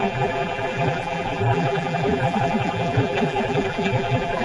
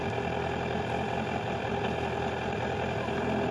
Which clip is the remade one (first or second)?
first